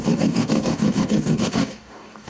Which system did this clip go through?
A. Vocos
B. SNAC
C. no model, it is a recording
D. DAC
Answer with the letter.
D